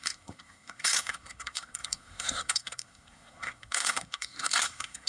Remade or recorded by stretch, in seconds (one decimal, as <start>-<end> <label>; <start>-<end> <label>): 0.0-5.1 remade